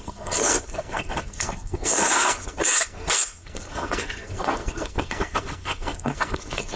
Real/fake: fake